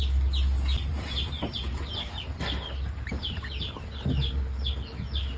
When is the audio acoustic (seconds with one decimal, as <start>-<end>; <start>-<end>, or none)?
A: 0.0-0.9; 3.5-5.4